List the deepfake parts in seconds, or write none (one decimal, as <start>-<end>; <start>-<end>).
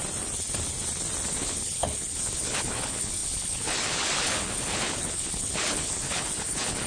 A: 1.3-6.9